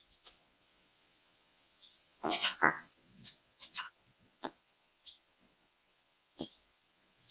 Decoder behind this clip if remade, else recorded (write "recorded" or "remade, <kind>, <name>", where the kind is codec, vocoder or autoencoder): remade, vocoder, Vocos